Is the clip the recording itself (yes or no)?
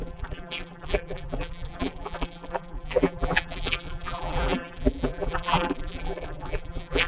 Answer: no